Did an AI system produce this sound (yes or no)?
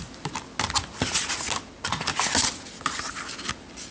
no